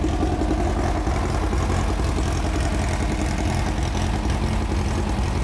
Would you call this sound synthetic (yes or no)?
no